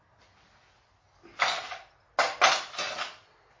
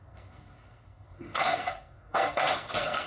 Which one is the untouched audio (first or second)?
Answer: first